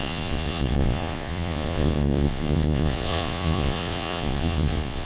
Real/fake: fake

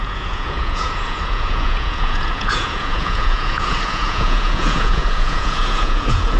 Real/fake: fake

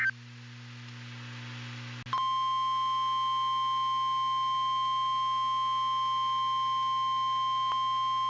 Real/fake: real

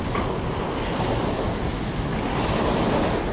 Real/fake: real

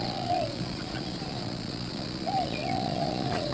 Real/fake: fake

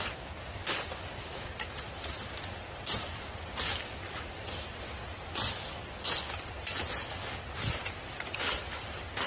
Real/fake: real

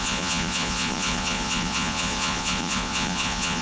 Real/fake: fake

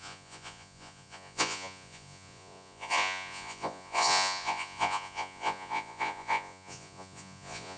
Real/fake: fake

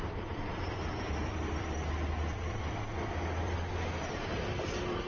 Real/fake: real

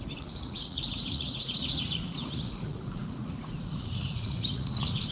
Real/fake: fake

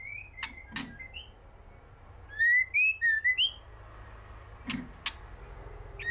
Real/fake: real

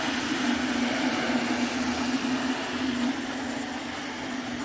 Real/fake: real